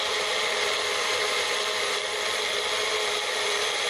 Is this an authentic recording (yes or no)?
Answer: yes